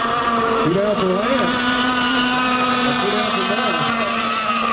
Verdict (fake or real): real